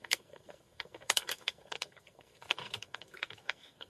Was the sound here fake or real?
fake